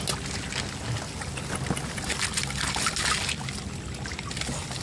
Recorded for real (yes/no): yes